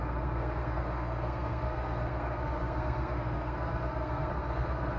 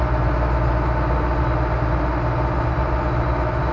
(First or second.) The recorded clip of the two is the second